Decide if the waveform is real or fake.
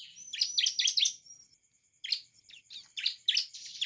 real